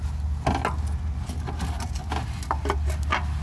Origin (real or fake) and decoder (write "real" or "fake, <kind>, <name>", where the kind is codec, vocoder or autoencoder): real